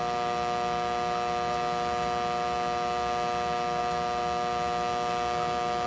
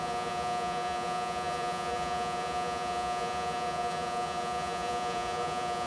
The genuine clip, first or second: first